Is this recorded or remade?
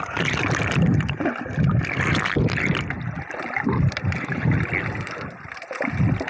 recorded